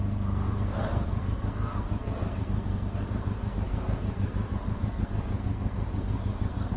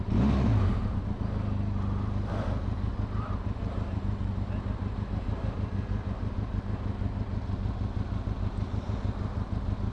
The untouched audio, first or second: second